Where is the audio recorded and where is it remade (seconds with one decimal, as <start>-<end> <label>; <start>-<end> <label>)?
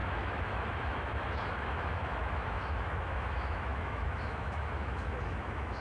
0.0-5.8 remade